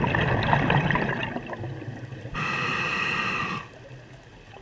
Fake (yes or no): no